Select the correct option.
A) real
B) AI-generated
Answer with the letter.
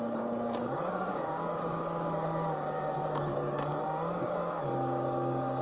B